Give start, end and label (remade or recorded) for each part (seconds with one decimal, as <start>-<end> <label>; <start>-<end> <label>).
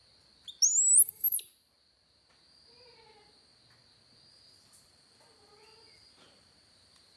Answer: 0.0-4.3 recorded; 4.3-7.2 remade